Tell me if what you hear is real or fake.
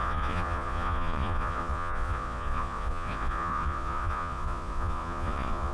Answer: fake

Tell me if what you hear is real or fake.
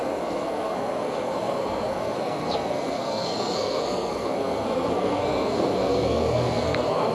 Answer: fake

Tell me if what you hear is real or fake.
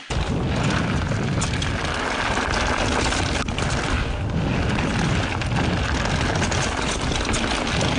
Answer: real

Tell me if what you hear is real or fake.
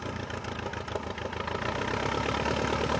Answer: real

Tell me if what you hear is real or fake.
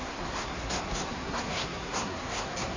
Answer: fake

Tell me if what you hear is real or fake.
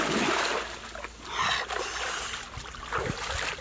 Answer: real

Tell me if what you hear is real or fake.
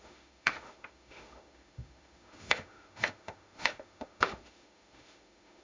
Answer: fake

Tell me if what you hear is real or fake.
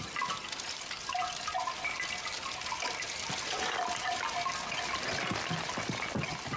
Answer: real